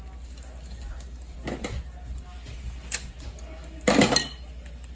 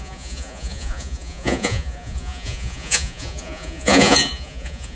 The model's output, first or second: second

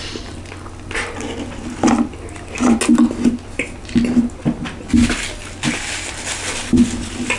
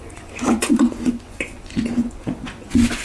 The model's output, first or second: second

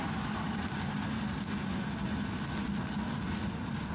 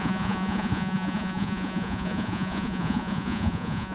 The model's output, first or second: second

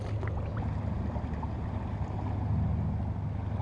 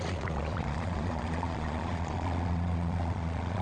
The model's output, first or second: second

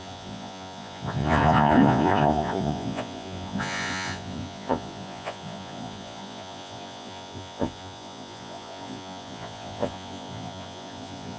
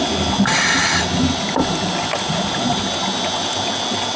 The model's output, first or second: first